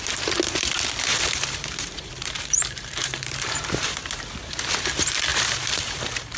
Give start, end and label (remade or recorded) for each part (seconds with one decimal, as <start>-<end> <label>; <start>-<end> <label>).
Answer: 0.0-1.1 recorded; 1.1-4.0 remade; 4.0-5.3 recorded; 5.3-6.4 remade